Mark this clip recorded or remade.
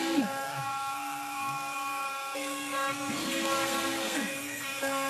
remade